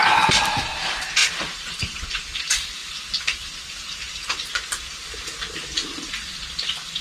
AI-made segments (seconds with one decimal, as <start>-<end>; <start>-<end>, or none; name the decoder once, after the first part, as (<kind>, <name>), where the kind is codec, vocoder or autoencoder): 0.0-2.8 (vocoder, BigVGAN v2)